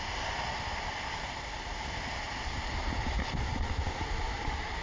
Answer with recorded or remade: recorded